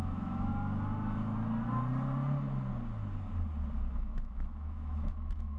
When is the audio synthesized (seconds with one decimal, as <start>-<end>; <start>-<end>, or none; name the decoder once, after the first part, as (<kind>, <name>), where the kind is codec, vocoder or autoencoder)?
0.0-0.5 (autoencoder, DAC-VAE); 3.9-5.6